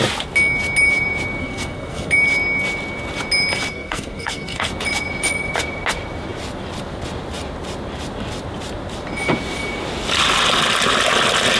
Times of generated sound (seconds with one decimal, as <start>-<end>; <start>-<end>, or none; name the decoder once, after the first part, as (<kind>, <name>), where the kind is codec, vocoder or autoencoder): 1.4-2.1 (codec, SNAC); 3.7-4.7